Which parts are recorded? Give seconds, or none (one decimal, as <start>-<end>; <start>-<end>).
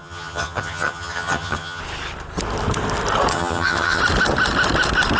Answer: 1.8-3.3; 4.0-5.2